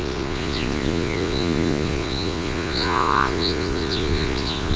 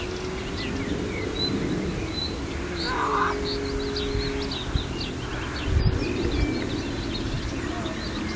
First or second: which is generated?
first